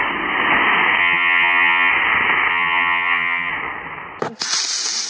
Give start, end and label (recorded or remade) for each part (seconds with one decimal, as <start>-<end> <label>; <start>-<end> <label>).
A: 0.0-1.0 recorded; 1.0-1.9 remade; 1.9-2.5 recorded; 2.5-3.5 remade; 3.5-5.1 recorded